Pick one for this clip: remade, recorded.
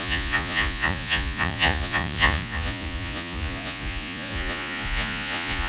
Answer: remade